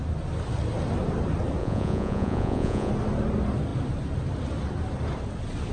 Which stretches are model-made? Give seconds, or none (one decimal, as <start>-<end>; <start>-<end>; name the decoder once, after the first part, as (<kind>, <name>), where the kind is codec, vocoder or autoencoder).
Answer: 1.6-2.9 (vocoder, Vocos)